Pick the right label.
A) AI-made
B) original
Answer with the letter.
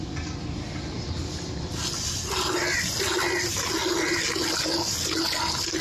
B